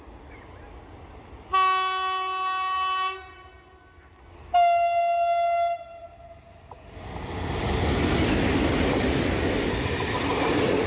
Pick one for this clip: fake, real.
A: real